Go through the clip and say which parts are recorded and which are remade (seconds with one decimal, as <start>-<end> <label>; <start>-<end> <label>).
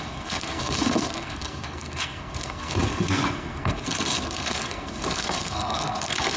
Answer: 0.0-6.4 remade